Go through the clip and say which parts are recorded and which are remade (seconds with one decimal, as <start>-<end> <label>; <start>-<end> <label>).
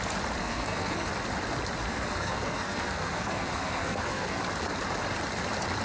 0.0-0.4 recorded; 0.4-1.1 remade; 1.1-1.9 recorded; 1.9-4.4 remade; 4.4-5.8 recorded